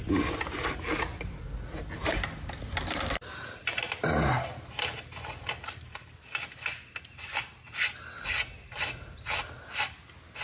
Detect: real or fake real